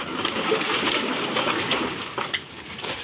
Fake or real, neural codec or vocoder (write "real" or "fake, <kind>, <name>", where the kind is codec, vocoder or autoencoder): fake, codec, DAC